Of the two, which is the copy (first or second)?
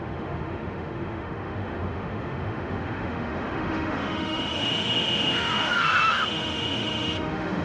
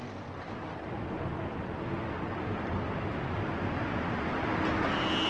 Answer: first